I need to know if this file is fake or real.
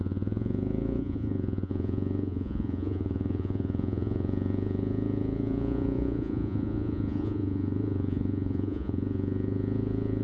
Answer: fake